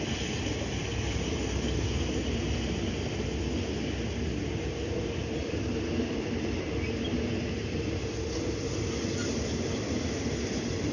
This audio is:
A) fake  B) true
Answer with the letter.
B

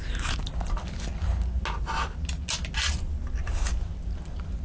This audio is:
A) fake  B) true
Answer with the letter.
B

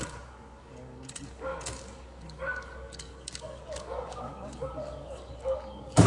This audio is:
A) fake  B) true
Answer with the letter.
A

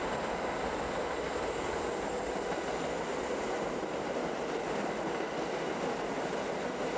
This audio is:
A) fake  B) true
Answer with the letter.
B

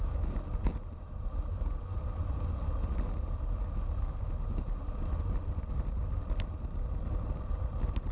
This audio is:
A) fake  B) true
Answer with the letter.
B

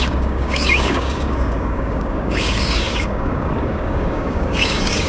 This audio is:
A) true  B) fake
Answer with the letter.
B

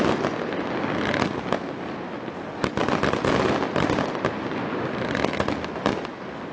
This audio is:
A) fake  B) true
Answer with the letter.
B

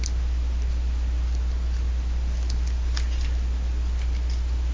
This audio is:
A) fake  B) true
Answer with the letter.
B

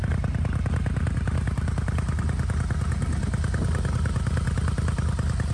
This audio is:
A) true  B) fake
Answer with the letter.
A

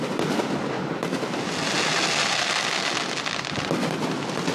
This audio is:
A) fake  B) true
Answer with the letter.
B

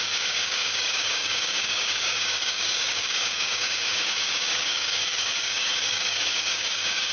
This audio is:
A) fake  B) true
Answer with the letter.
A